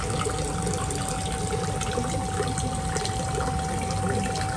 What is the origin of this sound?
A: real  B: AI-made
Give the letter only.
A